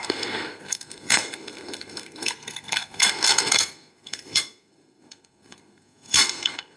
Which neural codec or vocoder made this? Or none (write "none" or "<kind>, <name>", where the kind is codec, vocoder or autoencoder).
codec, SNAC